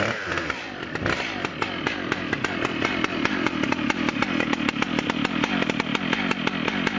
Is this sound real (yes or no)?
no